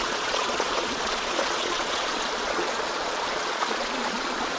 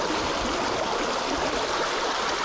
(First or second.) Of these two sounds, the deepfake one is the first